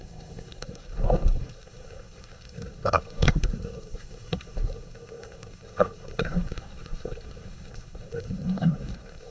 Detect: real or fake fake